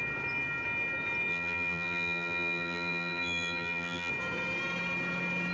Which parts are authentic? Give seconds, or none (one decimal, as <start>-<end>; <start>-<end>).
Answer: 0.0-1.3; 4.1-5.5